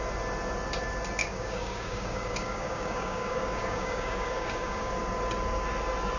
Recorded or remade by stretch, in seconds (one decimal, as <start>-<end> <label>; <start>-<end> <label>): 0.0-1.2 recorded; 1.2-4.9 remade; 4.9-6.2 recorded